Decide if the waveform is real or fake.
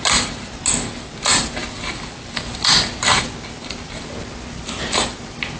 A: real